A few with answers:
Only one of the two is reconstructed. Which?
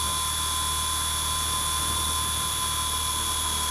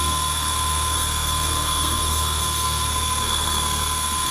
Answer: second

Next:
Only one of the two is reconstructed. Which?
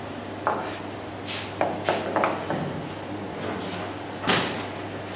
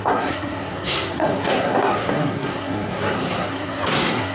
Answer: second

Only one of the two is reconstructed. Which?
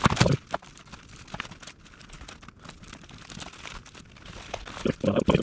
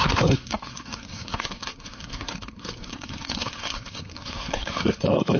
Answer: second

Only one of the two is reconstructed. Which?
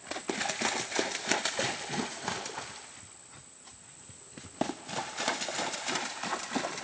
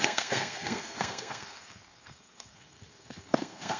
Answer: second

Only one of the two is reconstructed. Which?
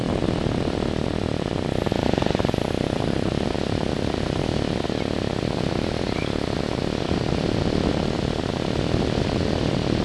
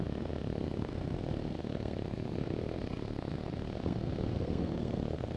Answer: second